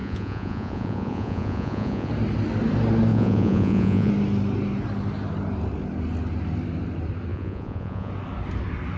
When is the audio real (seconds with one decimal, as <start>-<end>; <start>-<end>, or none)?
2.1-3.1; 4.1-7.3; 8.1-9.0